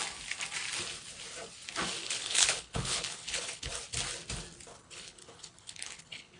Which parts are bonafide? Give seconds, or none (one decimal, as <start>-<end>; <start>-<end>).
0.0-2.0; 3.7-4.7